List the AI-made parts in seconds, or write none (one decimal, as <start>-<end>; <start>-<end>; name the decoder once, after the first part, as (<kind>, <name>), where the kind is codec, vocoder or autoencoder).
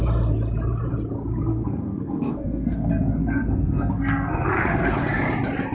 1.5-4.9 (codec, SNAC)